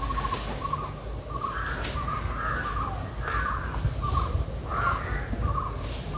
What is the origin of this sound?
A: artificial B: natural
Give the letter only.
B